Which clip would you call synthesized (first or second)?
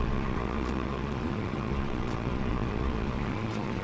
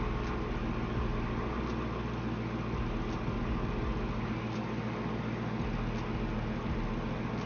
first